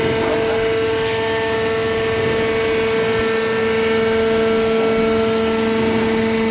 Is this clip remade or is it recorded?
recorded